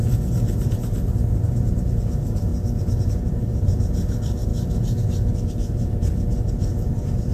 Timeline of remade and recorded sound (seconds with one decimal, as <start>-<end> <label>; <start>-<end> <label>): 0.0-2.5 remade; 2.5-3.1 recorded; 3.1-4.5 remade; 4.5-5.3 recorded; 5.3-7.3 remade